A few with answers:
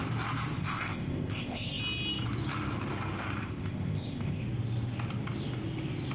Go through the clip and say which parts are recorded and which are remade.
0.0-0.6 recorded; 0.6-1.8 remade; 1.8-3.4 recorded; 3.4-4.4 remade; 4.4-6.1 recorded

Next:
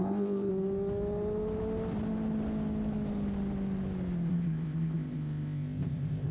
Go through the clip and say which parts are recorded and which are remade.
0.0-0.5 remade; 0.5-4.3 recorded; 4.3-6.3 remade